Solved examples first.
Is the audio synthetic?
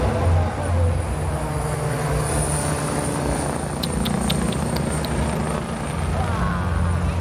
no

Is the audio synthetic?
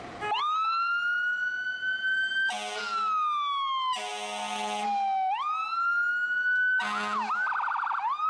no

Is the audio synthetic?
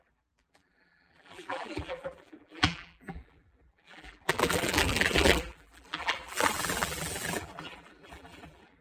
yes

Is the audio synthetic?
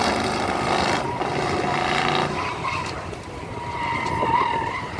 no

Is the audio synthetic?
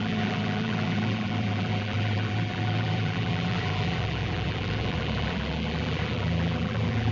yes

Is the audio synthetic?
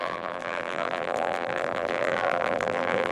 yes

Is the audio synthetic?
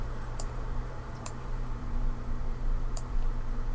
yes